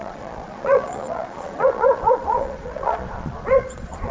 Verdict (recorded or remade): remade